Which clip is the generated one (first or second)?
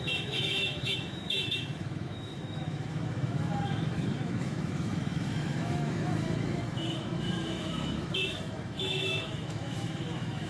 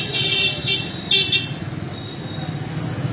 first